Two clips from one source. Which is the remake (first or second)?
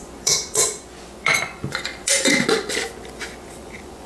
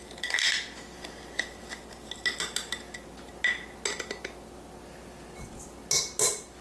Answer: first